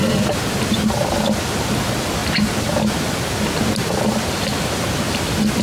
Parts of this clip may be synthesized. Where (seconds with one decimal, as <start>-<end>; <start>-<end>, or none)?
none